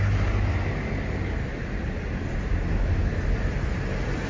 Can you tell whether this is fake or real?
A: real